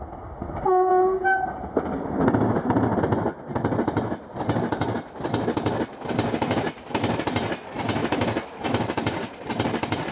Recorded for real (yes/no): yes